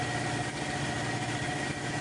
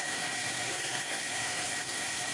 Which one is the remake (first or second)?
second